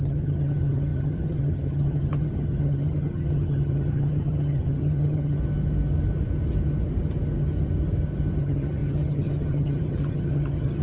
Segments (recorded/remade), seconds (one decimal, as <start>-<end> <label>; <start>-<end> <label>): 0.0-5.4 remade; 5.4-8.4 recorded; 8.4-10.8 remade